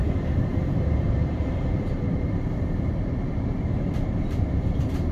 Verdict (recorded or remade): remade